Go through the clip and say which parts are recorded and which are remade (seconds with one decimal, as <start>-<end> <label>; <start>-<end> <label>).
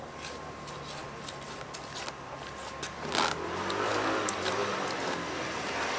0.0-6.0 recorded